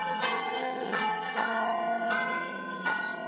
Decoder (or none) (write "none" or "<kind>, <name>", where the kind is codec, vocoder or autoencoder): vocoder, HiFi-GAN